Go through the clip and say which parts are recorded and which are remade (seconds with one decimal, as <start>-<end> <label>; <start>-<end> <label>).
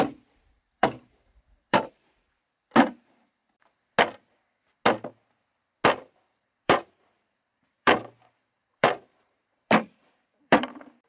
0.0-3.4 remade; 3.4-6.2 recorded; 6.2-11.1 remade